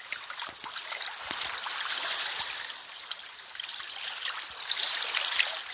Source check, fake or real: real